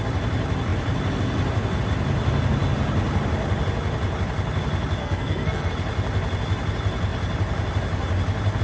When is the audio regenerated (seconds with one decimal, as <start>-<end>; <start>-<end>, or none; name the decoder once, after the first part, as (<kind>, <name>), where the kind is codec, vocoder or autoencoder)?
5.0-5.7 (codec, SNAC)